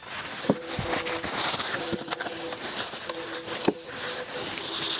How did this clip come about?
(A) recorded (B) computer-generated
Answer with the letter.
A